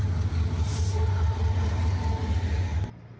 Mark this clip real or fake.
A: real